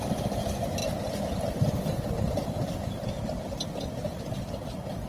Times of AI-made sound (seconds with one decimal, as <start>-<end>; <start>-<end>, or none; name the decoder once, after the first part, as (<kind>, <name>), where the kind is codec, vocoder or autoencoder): none